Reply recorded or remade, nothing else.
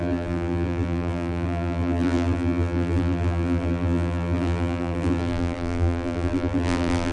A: remade